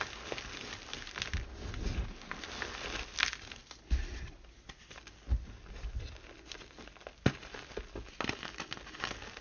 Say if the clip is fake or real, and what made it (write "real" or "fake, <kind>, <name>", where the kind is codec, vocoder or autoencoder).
real